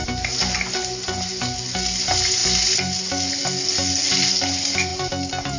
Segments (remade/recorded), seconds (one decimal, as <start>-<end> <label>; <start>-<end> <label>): 0.0-5.6 recorded

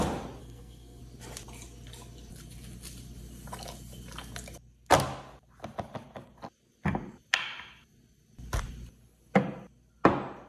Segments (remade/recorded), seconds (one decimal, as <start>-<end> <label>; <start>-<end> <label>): 0.0-0.4 recorded; 0.4-1.0 remade; 1.0-10.5 recorded